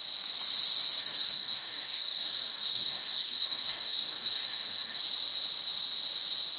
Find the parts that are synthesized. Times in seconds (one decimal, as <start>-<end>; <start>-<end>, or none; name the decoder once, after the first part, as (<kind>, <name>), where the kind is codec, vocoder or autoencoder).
1.0-5.0 (codec, DAC)